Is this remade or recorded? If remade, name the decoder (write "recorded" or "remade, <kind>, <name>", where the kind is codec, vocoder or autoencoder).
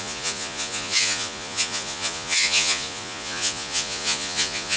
remade, vocoder, Vocos